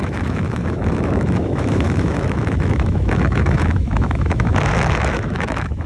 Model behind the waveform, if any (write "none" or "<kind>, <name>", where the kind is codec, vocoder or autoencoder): autoencoder, DAC-VAE